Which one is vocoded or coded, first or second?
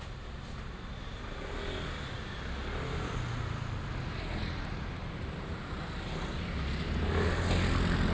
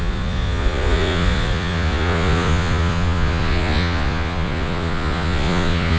second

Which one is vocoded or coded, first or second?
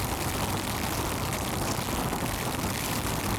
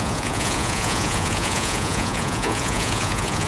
second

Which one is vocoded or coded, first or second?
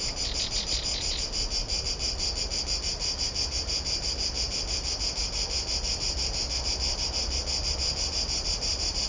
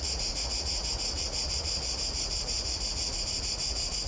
second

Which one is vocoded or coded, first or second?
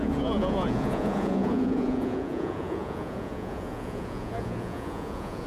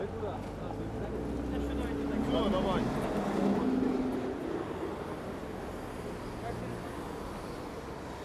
first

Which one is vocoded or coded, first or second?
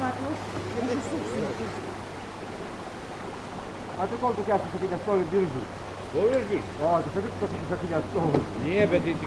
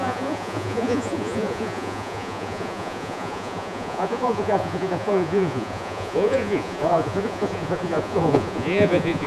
second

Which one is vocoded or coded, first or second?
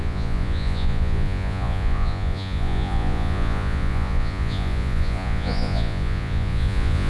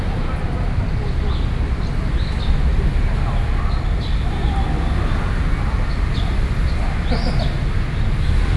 first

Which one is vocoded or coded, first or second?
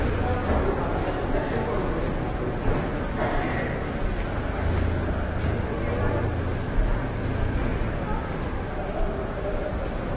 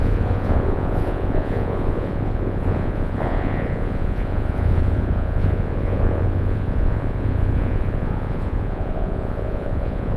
second